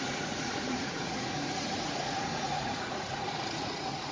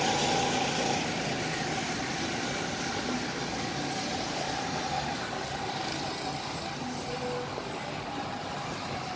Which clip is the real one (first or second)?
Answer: second